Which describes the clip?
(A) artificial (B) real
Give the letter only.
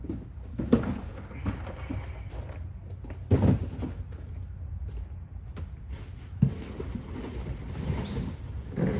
B